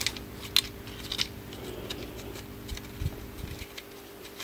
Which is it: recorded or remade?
recorded